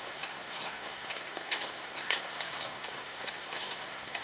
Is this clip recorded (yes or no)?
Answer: no